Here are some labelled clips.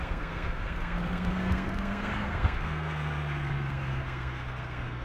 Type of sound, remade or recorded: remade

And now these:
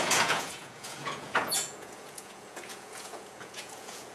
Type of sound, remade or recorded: remade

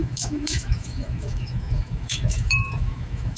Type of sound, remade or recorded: remade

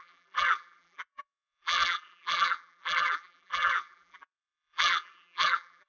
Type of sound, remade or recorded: remade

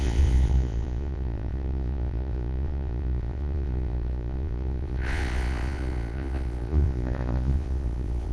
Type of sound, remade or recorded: remade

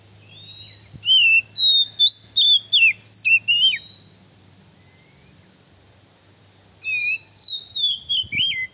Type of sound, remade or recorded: recorded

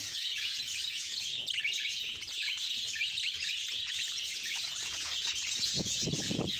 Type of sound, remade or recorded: remade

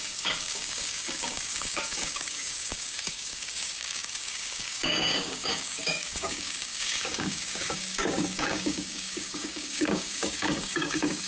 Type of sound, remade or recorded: remade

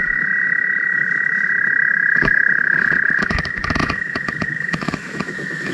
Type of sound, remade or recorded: remade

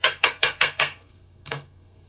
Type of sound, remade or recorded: remade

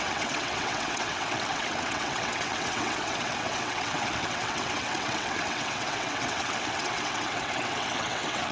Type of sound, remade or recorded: remade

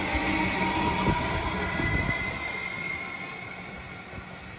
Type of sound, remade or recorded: recorded